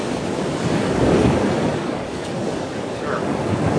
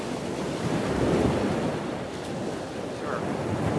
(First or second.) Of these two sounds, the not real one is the first